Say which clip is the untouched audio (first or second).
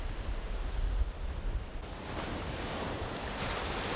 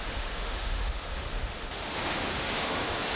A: first